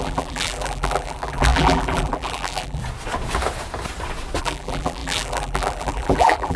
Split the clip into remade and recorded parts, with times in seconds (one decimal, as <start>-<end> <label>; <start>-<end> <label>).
0.0-2.8 remade; 2.8-4.4 recorded; 4.4-6.6 remade

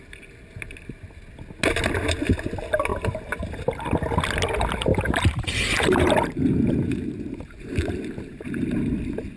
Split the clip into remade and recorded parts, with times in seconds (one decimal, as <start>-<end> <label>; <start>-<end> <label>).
0.0-2.9 recorded; 2.9-3.6 remade; 3.6-4.9 recorded; 4.9-9.0 remade; 9.0-9.4 recorded

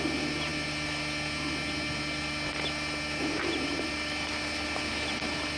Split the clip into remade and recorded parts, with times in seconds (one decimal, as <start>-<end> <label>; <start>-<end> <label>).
0.0-5.6 remade

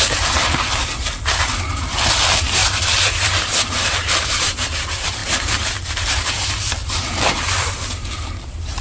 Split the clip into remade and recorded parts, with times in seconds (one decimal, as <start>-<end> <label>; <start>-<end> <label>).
0.0-5.2 remade; 5.2-6.3 recorded; 6.3-8.8 remade